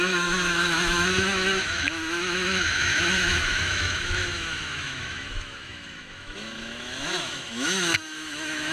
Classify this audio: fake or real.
fake